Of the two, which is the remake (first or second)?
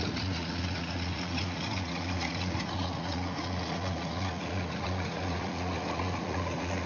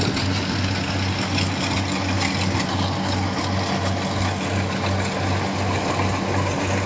first